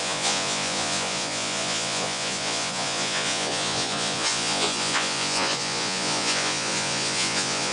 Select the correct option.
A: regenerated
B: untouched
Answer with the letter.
A